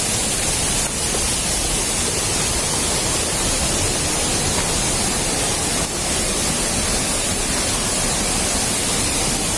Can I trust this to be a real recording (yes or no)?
yes